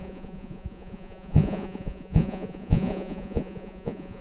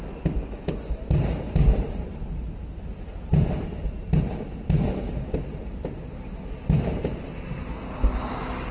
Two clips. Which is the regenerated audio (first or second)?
first